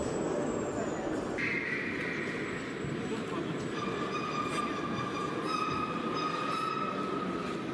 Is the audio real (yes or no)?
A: yes